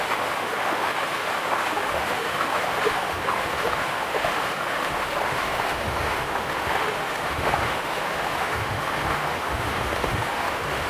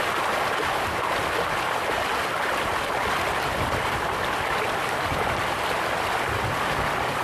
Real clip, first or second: second